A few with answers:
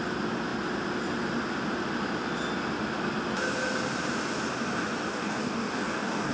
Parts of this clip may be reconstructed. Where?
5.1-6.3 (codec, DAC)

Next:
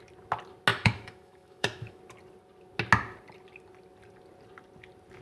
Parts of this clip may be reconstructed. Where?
0.7-2.0 (autoencoder, DAC-VAE)

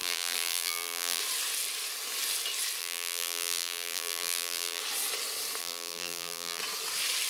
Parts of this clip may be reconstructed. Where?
0.0-1.2 (vocoder, BigVGAN v2); 2.8-4.8; 5.6-6.6

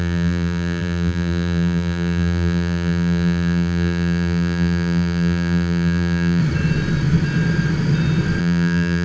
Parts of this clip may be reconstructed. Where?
0.0-6.4 (vocoder, BigVGAN v2); 8.4-9.0